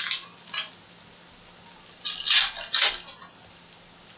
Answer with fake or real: real